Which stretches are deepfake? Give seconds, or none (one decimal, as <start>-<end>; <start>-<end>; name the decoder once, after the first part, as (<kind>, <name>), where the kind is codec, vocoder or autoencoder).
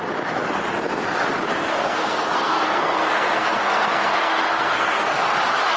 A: 1.7-5.2 (codec, SNAC)